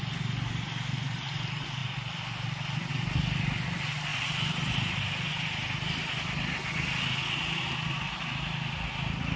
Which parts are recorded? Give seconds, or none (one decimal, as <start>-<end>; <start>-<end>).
0.0-1.8; 2.9-4.1; 5.0-9.4